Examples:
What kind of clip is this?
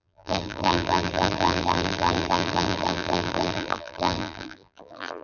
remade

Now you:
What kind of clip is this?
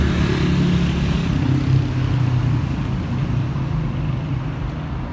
recorded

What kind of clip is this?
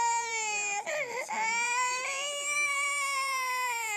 remade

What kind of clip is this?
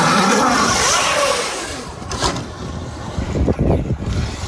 remade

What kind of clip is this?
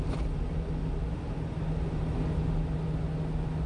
recorded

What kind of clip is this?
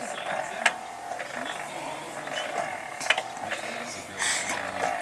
remade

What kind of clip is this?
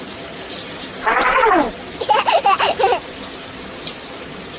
remade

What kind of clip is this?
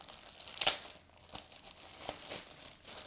recorded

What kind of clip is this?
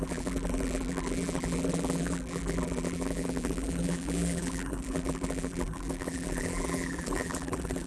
remade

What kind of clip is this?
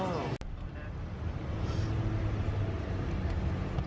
recorded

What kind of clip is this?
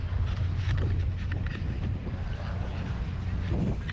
recorded